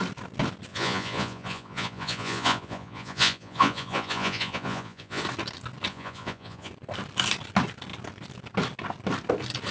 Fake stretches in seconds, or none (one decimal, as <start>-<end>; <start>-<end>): 0.7-5.2; 5.9-6.7